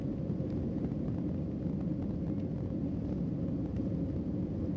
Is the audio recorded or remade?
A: recorded